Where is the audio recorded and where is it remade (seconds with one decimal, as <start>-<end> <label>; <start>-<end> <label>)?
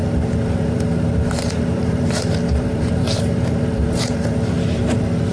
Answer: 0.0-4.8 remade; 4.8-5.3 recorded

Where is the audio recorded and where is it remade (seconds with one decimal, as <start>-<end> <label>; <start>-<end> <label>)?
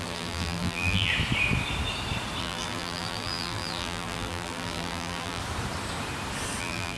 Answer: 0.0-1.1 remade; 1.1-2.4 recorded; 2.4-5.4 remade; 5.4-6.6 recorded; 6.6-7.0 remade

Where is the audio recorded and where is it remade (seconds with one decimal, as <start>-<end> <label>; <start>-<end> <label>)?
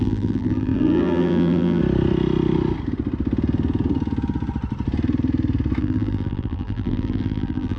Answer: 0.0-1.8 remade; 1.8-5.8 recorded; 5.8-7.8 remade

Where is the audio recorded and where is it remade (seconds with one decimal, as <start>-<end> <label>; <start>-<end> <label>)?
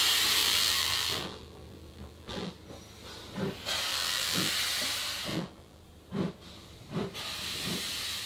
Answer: 0.0-0.4 recorded; 0.4-2.5 remade; 2.5-3.9 recorded; 3.9-4.5 remade; 4.5-5.3 recorded; 5.3-5.8 remade; 5.8-8.3 recorded